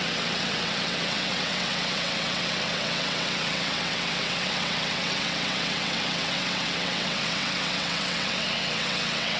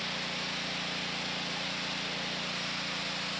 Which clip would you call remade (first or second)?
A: first